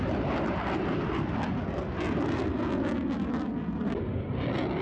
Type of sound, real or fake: real